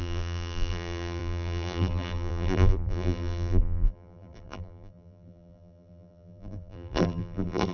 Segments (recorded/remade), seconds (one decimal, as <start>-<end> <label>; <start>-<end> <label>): 0.0-7.7 remade